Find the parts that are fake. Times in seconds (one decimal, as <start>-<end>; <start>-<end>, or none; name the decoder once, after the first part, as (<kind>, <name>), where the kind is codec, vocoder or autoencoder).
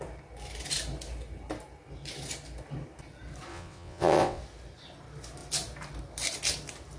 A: 3.5-4.4 (vocoder, WaveNeXt)